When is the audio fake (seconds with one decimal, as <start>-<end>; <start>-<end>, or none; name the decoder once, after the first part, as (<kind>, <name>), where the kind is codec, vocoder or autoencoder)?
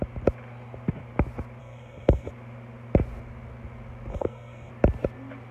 1.6-2.3 (codec, SNAC); 4.1-4.7